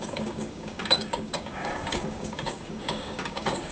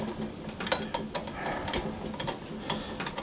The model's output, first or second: first